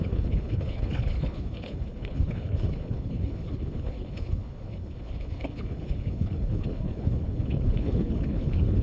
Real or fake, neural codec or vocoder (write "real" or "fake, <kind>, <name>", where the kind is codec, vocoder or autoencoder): fake, codec, HILCodec